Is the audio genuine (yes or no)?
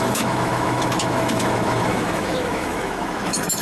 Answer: no